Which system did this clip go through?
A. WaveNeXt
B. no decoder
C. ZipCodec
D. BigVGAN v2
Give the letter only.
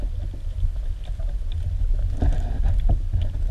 B